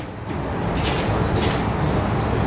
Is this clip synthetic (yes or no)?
no